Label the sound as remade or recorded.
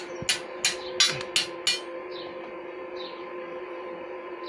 recorded